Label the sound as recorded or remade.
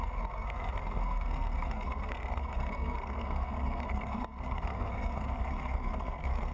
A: remade